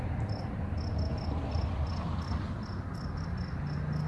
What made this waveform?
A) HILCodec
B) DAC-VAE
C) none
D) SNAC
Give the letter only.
C